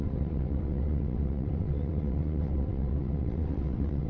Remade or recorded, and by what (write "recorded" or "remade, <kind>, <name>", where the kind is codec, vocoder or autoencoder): remade, vocoder, WaveNeXt